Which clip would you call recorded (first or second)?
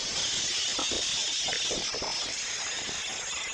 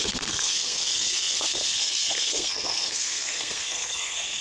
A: first